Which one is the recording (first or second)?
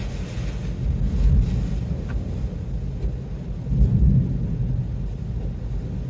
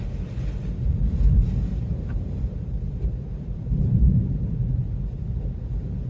first